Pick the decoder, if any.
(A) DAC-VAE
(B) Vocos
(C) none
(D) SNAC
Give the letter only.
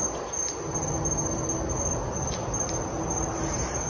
C